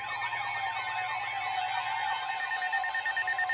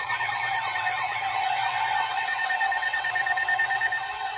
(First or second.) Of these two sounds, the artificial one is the second